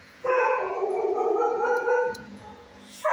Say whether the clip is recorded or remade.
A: remade